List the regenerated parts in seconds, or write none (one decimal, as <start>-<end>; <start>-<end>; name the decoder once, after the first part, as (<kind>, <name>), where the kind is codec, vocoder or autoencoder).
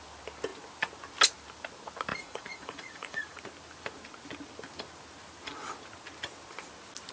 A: 2.1-3.4 (vocoder, Vocos)